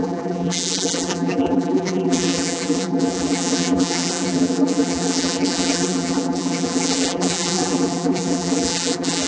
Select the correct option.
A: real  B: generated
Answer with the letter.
B